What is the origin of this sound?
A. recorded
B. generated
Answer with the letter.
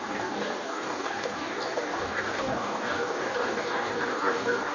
B